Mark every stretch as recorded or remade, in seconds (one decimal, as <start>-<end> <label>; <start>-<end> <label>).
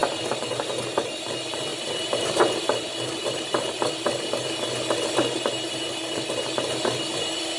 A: 0.0-0.8 remade; 0.8-1.7 recorded; 1.7-3.9 remade; 3.9-7.6 recorded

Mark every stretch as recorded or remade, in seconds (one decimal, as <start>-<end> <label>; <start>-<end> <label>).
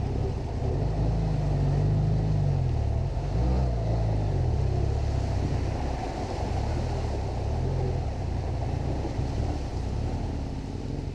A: 0.0-11.1 recorded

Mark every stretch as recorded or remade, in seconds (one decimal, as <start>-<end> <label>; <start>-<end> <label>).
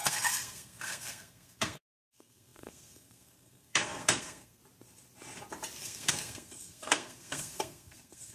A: 0.0-4.6 remade; 4.6-5.8 recorded; 5.8-8.3 remade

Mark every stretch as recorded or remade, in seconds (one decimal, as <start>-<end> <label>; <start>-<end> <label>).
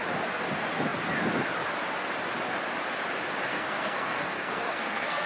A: 0.0-3.5 recorded; 3.5-5.3 remade